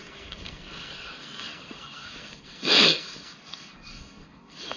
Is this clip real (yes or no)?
no